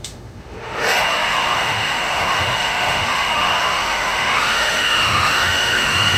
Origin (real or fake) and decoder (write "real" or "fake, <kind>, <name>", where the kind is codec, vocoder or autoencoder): fake, autoencoder, DAC-VAE